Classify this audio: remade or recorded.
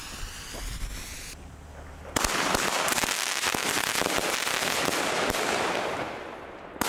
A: recorded